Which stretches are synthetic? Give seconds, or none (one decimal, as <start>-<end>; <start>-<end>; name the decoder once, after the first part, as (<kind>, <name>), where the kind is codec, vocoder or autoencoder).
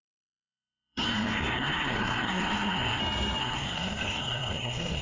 0.0-3.0 (codec, SNAC); 3.4-5.0